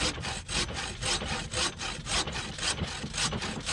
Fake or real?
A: real